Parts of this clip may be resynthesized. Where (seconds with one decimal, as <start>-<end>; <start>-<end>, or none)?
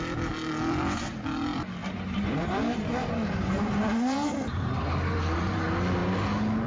1.8-4.8